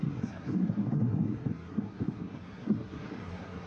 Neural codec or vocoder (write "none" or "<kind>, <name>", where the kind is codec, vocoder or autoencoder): codec, SNAC